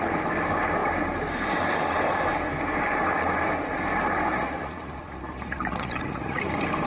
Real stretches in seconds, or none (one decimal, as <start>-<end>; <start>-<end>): 0.0-4.3; 6.4-6.9